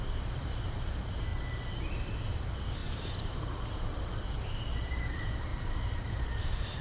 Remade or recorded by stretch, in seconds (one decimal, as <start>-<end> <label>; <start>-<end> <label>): 0.0-2.8 recorded; 2.8-3.8 remade; 3.8-5.5 recorded; 5.5-6.8 remade